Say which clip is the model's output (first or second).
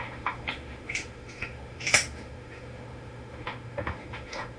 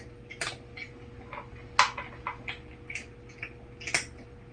first